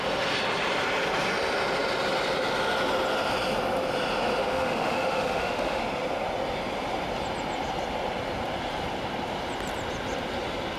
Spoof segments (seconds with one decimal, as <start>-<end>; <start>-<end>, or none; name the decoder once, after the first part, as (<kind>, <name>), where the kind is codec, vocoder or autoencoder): 4.4-5.8 (autoencoder, DAC-VAE)